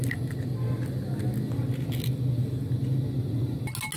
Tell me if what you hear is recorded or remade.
recorded